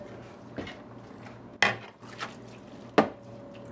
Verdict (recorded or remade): recorded